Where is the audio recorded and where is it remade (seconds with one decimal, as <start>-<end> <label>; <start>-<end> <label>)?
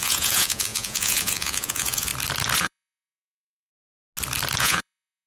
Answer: 0.0-2.1 remade; 2.1-2.6 recorded; 2.6-3.7 remade; 3.7-4.6 recorded; 4.6-5.3 remade